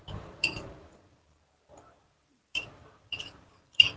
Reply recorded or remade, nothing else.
remade